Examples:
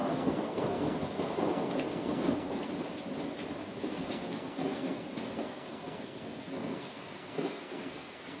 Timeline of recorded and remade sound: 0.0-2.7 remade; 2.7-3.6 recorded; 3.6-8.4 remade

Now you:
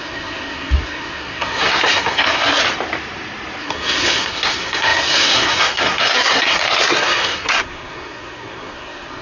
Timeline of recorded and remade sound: 0.0-2.6 remade; 2.6-3.6 recorded; 3.6-9.2 remade